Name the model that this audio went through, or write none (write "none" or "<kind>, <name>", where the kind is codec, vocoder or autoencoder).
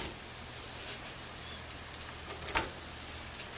none